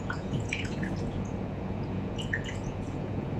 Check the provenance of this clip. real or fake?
fake